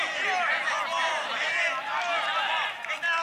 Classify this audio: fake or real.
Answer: real